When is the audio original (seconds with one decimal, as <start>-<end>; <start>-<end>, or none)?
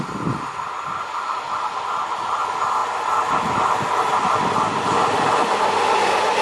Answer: 0.0-6.4